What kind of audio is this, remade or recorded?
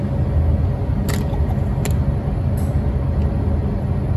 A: recorded